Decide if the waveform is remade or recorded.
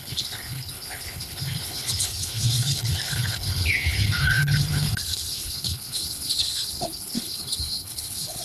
remade